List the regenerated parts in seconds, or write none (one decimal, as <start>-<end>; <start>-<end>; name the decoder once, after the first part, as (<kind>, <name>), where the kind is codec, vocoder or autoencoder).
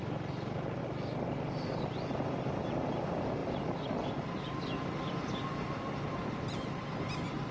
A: none